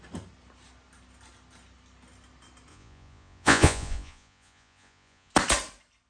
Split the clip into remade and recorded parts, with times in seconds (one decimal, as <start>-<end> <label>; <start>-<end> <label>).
0.0-2.7 recorded; 2.7-5.3 remade; 5.3-6.1 recorded